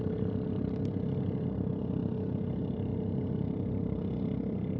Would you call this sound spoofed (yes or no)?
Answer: no